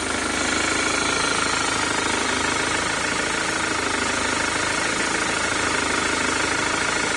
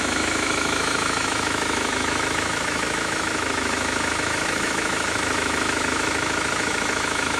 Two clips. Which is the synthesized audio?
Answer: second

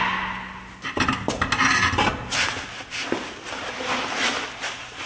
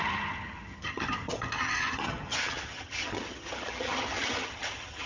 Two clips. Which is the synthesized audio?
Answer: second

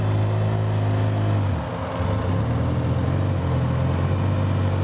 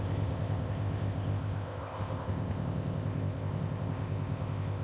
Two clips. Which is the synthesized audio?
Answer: second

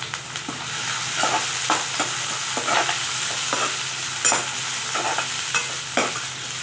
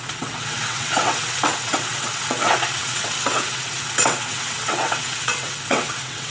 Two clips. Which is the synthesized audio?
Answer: second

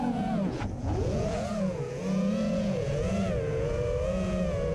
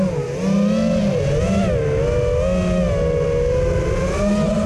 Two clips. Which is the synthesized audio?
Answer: first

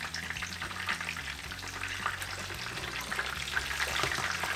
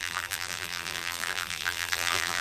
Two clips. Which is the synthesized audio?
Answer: second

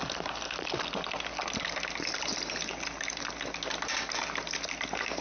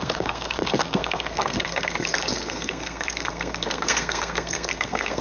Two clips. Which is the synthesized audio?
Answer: second